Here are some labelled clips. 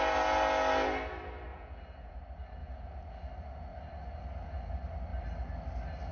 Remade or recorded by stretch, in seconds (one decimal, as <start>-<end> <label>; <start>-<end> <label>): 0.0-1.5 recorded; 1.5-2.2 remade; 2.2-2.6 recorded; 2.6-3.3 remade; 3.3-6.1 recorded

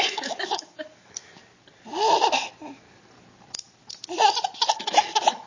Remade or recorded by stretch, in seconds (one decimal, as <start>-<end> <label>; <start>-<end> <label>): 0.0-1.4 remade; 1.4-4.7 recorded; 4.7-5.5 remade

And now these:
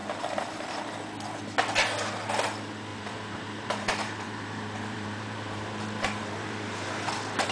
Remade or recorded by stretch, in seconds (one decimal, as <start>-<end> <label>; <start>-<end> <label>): 0.0-0.8 remade; 0.8-2.9 recorded; 2.9-7.5 remade

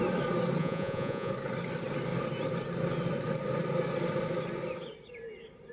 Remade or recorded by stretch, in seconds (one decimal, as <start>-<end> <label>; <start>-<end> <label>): 0.0-0.6 recorded; 0.6-1.3 remade; 1.3-5.7 recorded

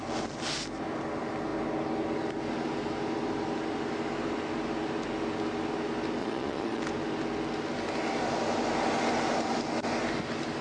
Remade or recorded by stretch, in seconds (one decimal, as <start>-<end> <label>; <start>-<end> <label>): 0.0-6.2 recorded; 6.2-6.8 remade; 6.8-10.6 recorded